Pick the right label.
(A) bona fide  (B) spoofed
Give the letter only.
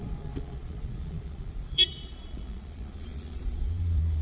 B